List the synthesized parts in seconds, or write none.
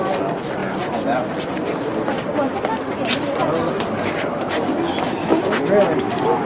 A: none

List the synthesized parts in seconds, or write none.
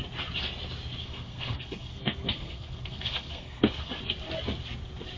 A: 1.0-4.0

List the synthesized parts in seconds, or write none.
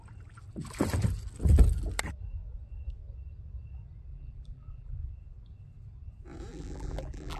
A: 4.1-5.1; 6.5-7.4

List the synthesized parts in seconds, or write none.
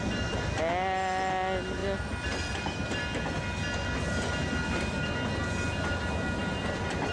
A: none